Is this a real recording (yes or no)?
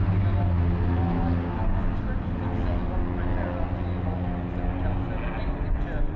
yes